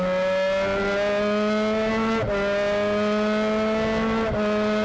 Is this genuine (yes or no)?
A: yes